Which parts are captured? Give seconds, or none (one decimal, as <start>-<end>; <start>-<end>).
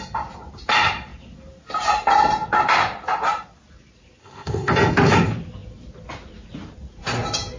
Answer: 0.0-4.2; 4.7-7.6